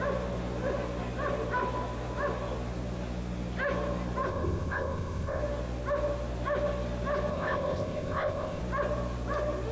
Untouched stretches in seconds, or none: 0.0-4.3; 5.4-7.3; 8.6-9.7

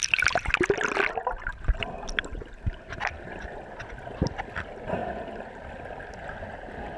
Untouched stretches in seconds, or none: 0.0-7.0

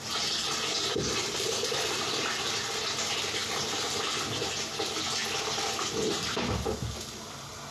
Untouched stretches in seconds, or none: 0.0-7.7

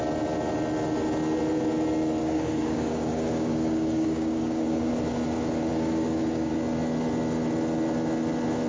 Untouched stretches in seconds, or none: 0.0-2.2; 4.9-5.7; 6.5-8.7

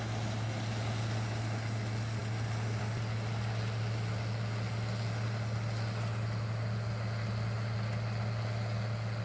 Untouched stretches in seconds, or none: 0.0-9.2

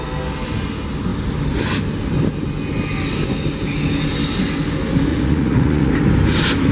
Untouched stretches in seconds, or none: 0.0-5.1; 5.9-6.7

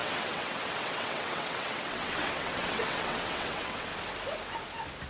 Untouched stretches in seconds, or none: 3.9-5.1

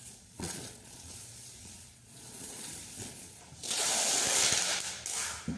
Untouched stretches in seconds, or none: 3.4-5.6